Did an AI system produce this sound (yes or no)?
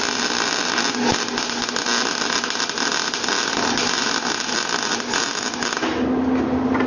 no